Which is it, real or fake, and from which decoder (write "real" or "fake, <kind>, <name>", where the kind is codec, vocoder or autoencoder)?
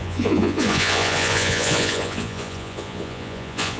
fake, vocoder, Vocos